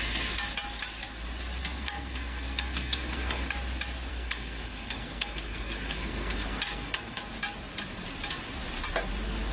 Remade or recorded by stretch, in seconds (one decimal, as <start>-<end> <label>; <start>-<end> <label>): 0.0-1.6 recorded; 1.6-3.4 remade; 3.4-4.1 recorded; 4.1-7.2 remade; 7.2-9.5 recorded